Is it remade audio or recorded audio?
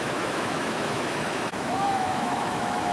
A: remade